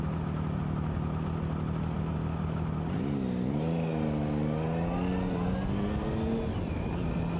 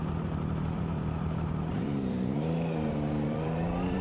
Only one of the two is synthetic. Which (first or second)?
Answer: second